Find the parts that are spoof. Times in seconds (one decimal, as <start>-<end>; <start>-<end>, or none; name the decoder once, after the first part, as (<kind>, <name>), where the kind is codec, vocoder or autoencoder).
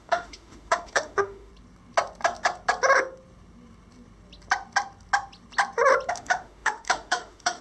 0.0-1.5 (autoencoder, DAC-VAE); 6.1-7.6